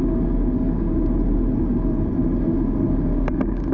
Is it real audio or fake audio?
real